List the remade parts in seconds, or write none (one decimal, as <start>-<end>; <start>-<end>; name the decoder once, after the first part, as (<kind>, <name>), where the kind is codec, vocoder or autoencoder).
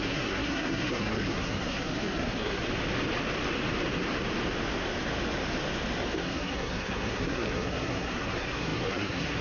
0.0-2.6 (codec, SNAC); 6.2-9.4